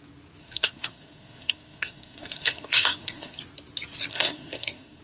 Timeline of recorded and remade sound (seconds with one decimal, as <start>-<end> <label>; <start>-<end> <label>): 0.0-0.4 recorded; 0.4-3.4 remade; 3.4-4.1 recorded; 4.1-5.0 remade